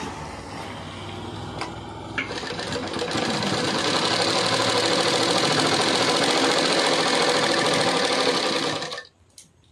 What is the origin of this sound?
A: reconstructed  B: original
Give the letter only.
B